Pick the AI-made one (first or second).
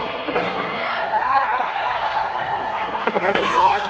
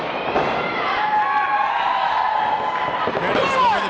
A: first